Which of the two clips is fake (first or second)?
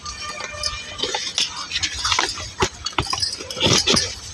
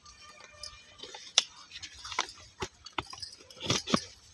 second